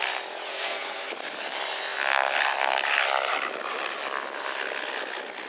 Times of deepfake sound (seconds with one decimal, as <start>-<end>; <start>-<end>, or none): 0.5-1.1